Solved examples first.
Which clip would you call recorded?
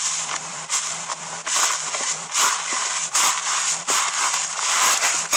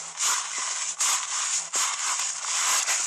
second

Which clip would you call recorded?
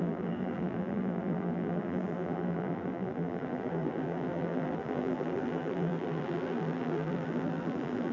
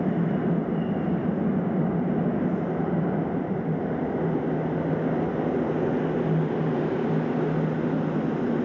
second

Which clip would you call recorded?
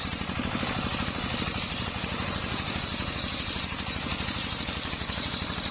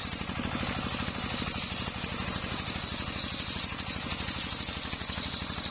second